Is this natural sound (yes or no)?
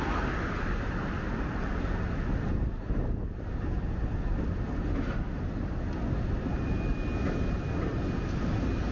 yes